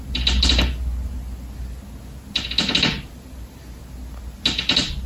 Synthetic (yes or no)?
no